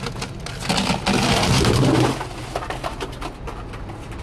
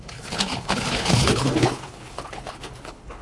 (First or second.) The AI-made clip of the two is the second